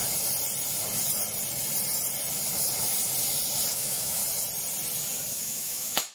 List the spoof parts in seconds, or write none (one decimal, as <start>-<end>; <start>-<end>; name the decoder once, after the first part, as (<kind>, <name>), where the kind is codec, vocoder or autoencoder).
3.7-4.2 (autoencoder, DAC-VAE); 5.3-6.1